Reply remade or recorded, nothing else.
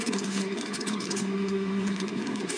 remade